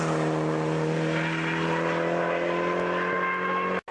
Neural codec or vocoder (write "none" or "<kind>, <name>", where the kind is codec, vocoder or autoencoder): none